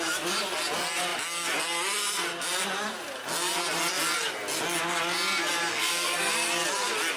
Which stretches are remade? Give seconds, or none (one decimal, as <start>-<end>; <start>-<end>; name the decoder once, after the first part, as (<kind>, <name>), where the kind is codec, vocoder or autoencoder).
5.7-6.3 (codec, SNAC)